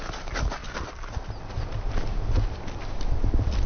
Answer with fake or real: real